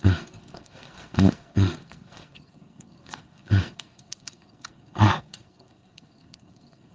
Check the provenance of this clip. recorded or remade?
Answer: remade